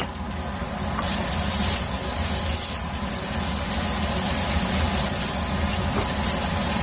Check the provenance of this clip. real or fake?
real